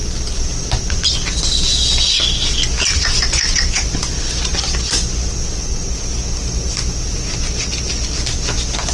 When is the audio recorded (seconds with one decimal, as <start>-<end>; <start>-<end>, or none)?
0.0-8.9